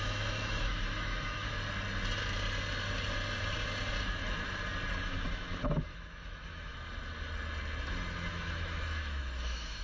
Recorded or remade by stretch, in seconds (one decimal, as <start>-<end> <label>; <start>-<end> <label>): 0.0-1.5 remade; 1.5-4.9 recorded; 4.9-6.7 remade; 6.7-8.3 recorded; 8.3-9.8 remade